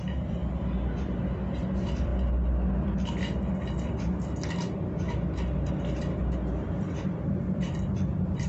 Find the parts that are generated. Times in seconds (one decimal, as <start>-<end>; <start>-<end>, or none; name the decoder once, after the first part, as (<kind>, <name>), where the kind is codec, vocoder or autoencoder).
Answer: 0.0-0.4 (vocoder, BigVGAN v2); 1.6-2.1; 5.7-8.5